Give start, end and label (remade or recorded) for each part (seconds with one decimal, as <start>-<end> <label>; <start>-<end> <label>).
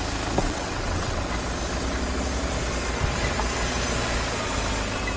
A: 0.0-0.4 recorded; 0.4-1.3 remade; 1.3-5.2 recorded